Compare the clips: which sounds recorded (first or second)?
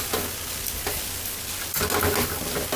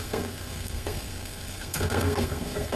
first